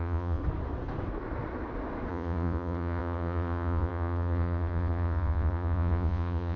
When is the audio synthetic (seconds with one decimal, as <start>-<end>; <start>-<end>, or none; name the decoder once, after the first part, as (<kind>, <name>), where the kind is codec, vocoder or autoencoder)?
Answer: 0.0-0.4 (vocoder, Vocos); 2.1-6.6

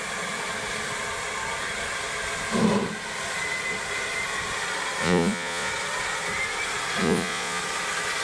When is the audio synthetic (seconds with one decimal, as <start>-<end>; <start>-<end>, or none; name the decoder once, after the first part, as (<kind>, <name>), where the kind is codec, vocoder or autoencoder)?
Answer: 5.0-5.7 (vocoder, Vocos); 7.0-7.6

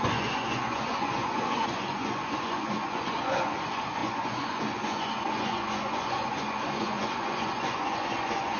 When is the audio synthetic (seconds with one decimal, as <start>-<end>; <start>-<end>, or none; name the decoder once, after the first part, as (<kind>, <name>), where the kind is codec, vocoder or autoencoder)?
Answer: 0.0-8.6 (vocoder, Vocos)